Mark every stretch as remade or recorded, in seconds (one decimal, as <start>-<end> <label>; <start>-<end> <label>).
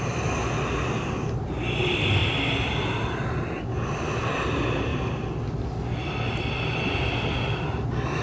0.0-8.2 recorded